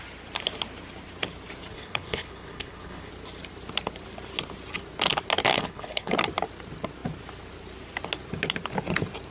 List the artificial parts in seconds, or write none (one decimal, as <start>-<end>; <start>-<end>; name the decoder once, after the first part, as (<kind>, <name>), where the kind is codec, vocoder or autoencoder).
1.7-3.1 (codec, HILCodec); 5.5-6.1